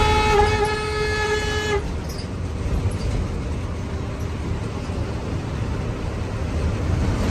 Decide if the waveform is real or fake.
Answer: real